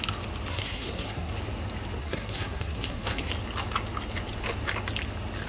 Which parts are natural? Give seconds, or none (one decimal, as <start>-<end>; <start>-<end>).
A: 0.0-0.5; 1.3-2.0; 3.3-5.5